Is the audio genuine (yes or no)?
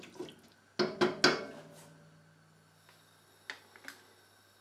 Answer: yes